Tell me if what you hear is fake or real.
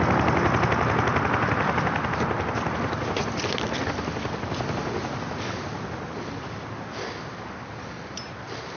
real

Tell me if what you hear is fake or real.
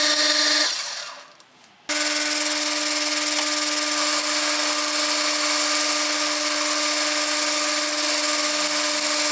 real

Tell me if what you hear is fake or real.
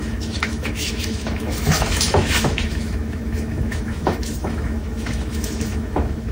fake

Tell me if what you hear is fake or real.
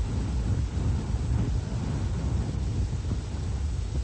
real